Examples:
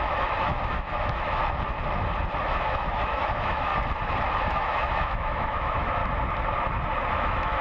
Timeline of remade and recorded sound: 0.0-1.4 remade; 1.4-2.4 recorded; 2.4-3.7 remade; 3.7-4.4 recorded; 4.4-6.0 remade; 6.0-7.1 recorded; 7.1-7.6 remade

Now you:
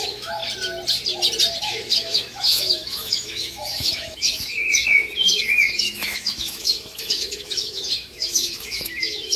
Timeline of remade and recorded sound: 0.0-0.4 remade; 0.4-1.6 recorded; 1.6-9.4 remade

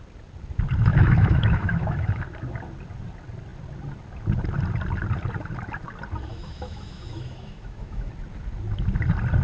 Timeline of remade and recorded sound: 0.0-0.9 recorded; 0.9-2.2 remade; 2.2-6.3 recorded; 6.3-8.1 remade; 8.1-9.4 recorded

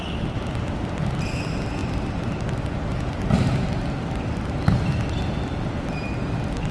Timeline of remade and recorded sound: 0.0-6.7 recorded

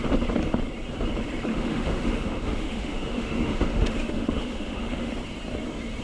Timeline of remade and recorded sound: 0.0-1.5 recorded; 1.5-5.1 remade; 5.1-6.0 recorded

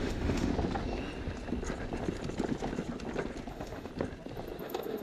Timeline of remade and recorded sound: 0.0-0.5 remade; 0.5-3.5 recorded; 3.5-3.9 remade; 3.9-4.6 recorded; 4.6-5.0 remade